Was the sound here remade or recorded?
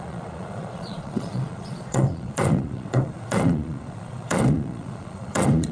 remade